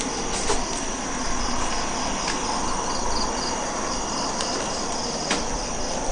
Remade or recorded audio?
recorded